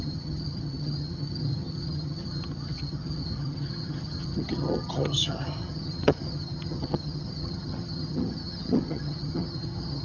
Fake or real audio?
fake